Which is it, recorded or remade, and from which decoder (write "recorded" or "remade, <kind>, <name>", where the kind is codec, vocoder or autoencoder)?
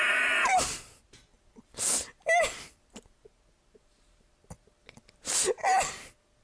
recorded